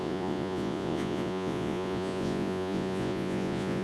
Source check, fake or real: fake